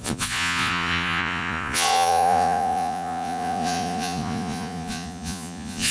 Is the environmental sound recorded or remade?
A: remade